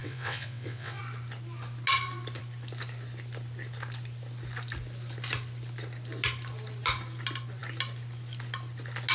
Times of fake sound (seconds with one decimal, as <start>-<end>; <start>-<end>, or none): 0.0-1.0